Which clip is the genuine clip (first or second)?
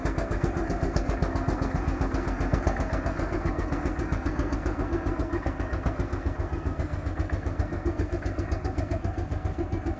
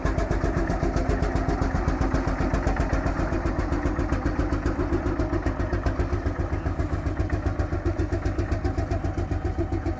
second